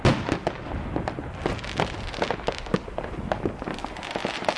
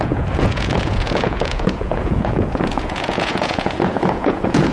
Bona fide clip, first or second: first